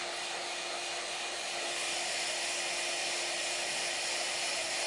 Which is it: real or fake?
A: real